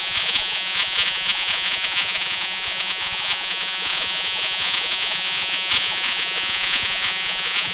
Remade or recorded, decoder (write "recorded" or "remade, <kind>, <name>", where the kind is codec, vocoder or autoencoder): remade, vocoder, Vocos